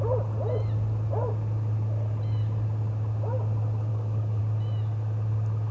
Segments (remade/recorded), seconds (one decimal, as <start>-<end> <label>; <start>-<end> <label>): 0.0-3.9 recorded; 3.9-4.4 remade; 4.4-5.7 recorded